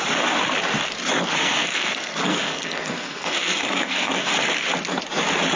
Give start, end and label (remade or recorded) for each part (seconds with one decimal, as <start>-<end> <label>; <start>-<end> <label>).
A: 0.0-1.4 recorded; 1.4-4.3 remade; 4.3-5.6 recorded

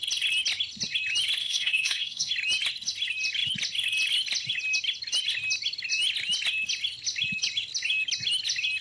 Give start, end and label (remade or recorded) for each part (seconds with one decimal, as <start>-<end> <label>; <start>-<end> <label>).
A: 0.0-1.4 recorded; 1.4-2.3 remade; 2.3-8.8 recorded

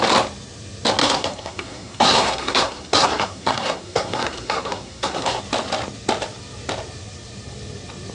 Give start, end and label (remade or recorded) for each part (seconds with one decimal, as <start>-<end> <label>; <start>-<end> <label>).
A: 0.0-1.0 recorded; 1.0-5.4 remade; 5.4-8.1 recorded